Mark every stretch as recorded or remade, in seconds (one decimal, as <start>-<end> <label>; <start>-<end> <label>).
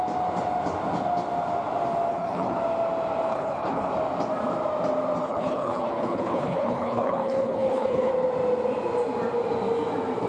0.0-2.1 recorded; 2.1-2.6 remade; 2.6-3.3 recorded; 3.3-3.9 remade; 3.9-5.2 recorded; 5.2-8.1 remade; 8.1-10.3 recorded